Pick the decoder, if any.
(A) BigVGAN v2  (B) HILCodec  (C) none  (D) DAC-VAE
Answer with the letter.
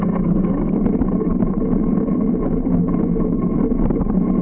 C